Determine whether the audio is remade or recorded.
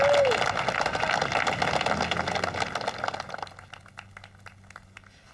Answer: recorded